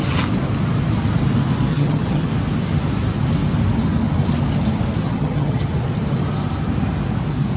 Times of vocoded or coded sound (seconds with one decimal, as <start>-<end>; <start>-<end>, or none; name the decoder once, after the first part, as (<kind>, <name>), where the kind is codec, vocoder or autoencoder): 1.7-2.3 (vocoder, HiFi-GAN); 5.0-5.7